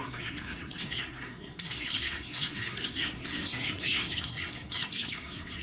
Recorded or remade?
remade